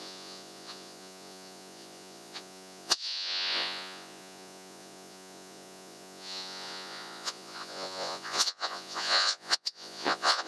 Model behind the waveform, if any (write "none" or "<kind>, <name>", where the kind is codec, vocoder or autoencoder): vocoder, Vocos